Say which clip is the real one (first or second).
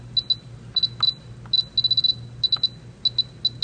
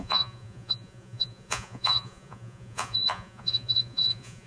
first